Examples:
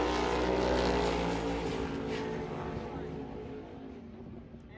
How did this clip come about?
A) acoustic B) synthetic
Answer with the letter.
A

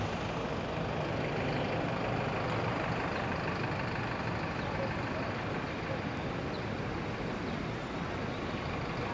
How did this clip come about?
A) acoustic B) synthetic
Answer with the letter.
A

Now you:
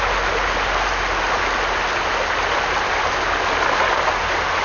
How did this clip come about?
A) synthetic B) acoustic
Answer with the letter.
B